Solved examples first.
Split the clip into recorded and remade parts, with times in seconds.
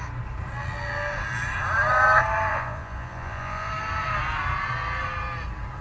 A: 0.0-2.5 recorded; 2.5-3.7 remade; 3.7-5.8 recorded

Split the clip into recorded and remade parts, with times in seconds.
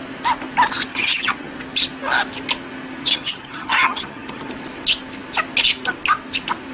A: 0.0-0.9 recorded; 0.9-1.5 remade; 1.5-3.0 recorded; 3.0-4.5 remade; 4.5-6.7 recorded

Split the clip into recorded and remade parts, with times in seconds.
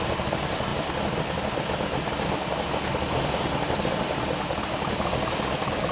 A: 0.0-5.9 recorded